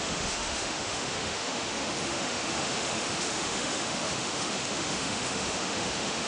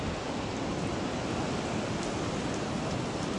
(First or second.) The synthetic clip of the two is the first